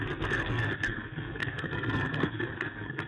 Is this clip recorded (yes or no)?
no